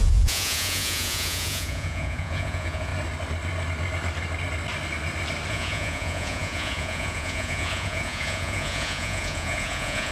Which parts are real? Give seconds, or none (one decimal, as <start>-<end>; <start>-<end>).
2.9-5.5